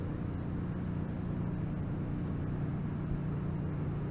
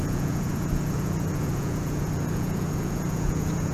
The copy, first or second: second